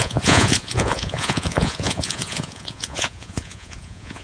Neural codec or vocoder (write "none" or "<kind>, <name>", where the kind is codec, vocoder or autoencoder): vocoder, Vocos